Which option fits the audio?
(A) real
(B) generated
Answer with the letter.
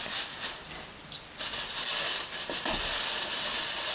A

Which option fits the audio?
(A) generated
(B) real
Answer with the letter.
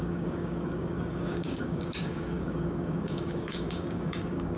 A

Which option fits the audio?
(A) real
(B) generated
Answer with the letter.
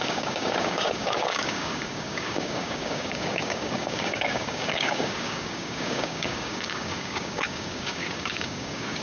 B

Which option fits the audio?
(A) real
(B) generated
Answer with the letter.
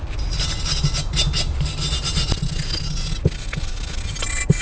A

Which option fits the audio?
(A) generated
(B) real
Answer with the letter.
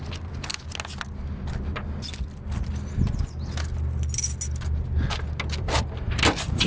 B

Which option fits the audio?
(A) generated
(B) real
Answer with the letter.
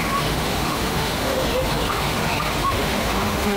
A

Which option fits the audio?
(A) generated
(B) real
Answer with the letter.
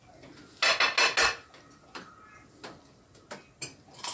B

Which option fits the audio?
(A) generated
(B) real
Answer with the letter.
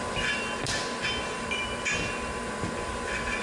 B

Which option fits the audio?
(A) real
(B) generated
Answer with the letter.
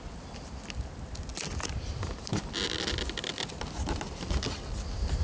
A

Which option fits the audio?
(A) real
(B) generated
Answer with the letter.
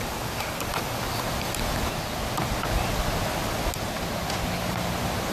A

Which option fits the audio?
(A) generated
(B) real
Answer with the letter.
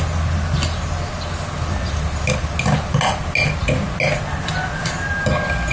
B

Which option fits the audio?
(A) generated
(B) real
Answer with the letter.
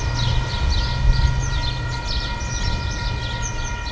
B